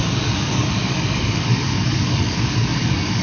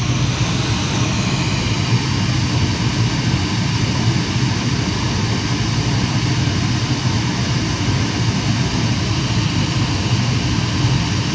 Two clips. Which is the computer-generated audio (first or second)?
first